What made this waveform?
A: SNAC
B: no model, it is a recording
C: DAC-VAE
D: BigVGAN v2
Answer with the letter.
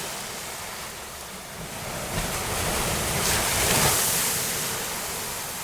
B